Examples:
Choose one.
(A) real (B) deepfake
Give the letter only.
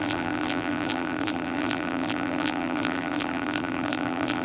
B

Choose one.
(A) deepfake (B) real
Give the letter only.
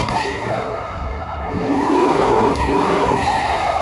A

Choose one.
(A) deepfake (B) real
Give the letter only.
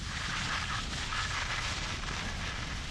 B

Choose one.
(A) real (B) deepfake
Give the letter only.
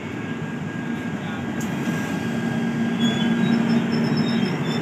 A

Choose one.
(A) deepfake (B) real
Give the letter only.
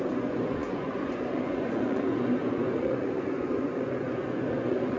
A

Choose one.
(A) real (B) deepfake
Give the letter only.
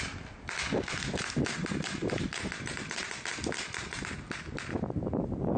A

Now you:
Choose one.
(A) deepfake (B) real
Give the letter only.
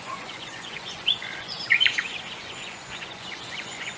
A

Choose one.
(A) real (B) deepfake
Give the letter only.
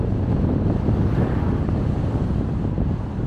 A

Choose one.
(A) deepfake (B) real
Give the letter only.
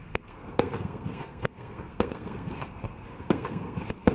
A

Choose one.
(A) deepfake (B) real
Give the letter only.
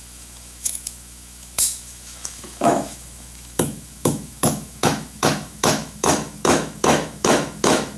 A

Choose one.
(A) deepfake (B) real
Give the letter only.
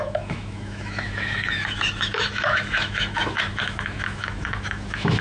A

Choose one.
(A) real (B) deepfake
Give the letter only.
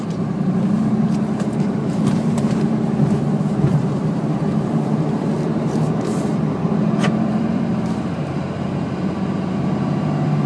B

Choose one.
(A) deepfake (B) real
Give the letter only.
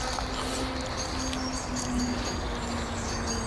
B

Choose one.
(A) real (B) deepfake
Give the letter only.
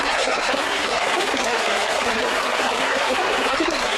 B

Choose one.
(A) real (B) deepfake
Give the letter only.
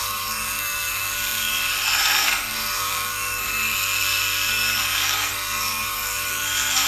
B